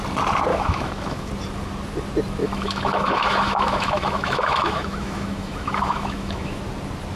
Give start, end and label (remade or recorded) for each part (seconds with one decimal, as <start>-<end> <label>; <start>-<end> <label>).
0.0-0.5 recorded; 0.5-1.3 remade; 1.3-2.4 recorded; 2.4-6.6 remade; 6.6-7.2 recorded